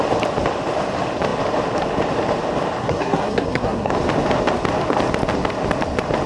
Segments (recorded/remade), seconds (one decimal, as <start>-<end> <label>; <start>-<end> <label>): 0.0-2.8 recorded; 2.8-3.9 remade; 3.9-6.3 recorded